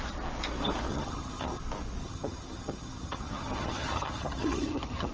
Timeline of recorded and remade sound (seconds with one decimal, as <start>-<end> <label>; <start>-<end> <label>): 0.0-0.9 recorded; 0.9-1.6 remade; 1.6-2.0 recorded; 2.0-5.1 remade